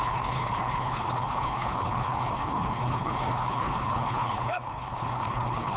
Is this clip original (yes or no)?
no